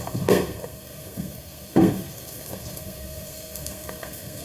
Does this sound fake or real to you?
fake